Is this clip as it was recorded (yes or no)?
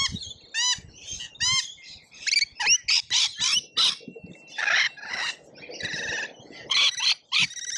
yes